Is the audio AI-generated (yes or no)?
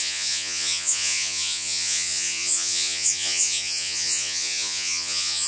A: yes